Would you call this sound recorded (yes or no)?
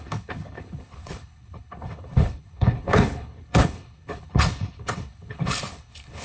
no